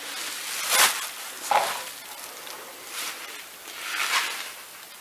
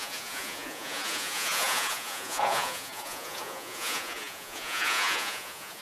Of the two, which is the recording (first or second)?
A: first